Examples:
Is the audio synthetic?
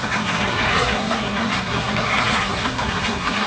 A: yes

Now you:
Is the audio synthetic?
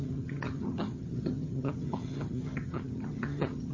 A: yes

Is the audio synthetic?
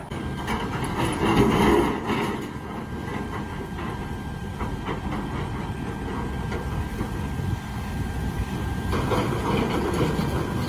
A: no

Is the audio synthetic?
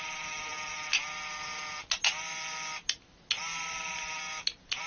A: no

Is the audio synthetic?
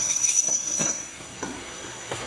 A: yes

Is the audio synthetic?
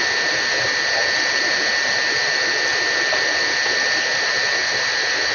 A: no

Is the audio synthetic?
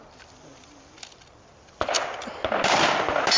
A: no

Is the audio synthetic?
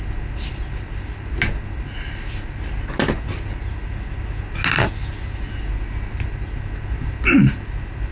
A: no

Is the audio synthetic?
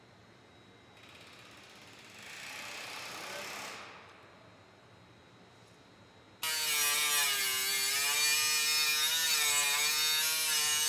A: no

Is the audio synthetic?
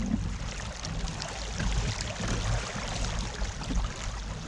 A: no